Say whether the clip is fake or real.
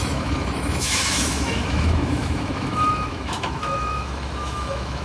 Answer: fake